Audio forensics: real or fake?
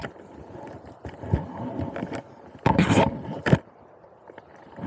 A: real